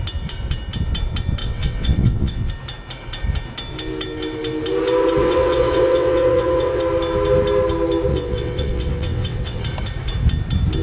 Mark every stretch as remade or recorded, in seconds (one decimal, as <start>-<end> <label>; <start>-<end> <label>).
0.0-1.4 recorded; 1.4-2.5 remade; 2.5-5.2 recorded; 5.2-6.8 remade; 6.8-8.1 recorded; 8.1-9.6 remade; 9.6-10.8 recorded